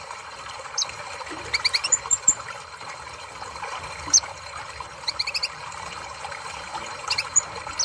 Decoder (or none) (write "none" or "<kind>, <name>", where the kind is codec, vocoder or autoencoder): vocoder, BigVGAN v2